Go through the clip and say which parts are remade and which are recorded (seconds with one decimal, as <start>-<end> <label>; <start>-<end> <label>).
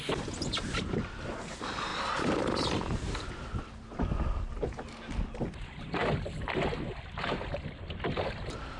0.0-8.8 recorded